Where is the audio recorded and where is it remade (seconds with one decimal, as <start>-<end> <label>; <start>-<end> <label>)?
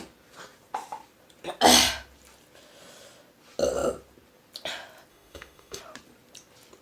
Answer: 0.0-5.1 recorded; 5.1-5.8 remade; 5.8-6.8 recorded